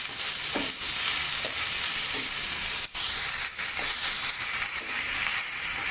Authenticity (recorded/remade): remade